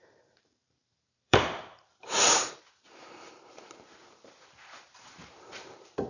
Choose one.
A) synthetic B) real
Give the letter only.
A